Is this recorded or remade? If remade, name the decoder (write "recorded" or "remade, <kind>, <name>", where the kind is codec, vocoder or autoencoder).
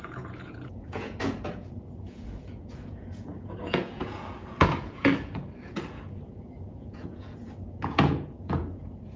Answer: remade, vocoder, Vocos